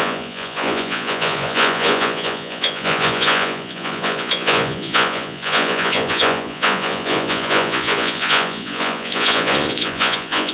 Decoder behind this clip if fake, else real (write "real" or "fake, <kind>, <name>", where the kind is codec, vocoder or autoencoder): fake, vocoder, Vocos